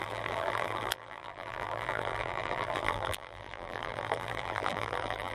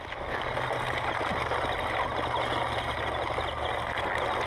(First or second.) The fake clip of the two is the first